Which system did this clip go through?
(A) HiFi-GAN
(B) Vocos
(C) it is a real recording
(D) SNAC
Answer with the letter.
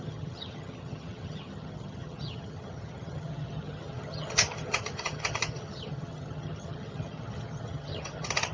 A